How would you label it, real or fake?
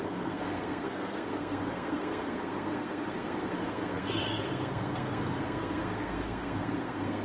fake